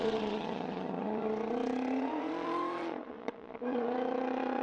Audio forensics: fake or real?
fake